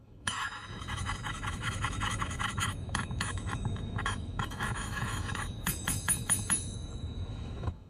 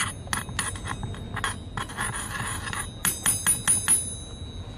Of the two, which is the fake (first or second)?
first